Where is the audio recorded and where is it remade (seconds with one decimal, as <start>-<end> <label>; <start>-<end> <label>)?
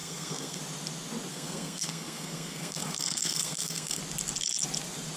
0.0-0.6 remade; 0.6-1.3 recorded; 1.3-4.0 remade; 4.0-5.2 recorded